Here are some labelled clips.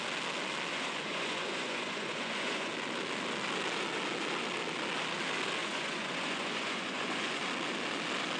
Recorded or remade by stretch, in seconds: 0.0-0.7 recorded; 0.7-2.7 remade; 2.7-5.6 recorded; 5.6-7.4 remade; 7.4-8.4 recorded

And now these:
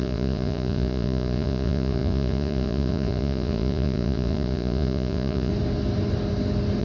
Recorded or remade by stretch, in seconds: 0.0-5.5 remade; 5.5-6.8 recorded